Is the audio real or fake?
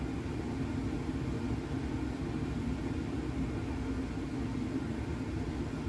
real